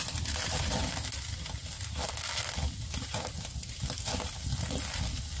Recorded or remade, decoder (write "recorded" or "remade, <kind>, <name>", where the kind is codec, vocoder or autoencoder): recorded